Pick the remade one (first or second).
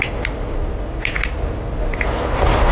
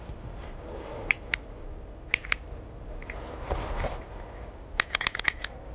second